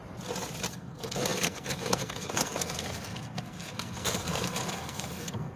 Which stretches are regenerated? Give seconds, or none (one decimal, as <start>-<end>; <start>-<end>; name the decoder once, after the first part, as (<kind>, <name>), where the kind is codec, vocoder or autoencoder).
0.7-5.6 (codec, SNAC)